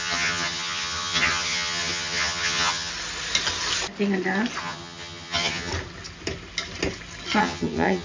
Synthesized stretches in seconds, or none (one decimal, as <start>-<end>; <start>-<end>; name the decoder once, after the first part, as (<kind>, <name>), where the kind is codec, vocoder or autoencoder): 0.0-2.9 (vocoder, HiFi-GAN); 4.6-5.7; 7.4-8.0